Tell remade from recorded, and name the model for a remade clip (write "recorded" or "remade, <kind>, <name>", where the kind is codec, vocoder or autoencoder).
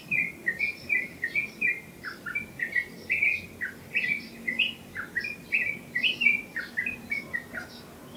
recorded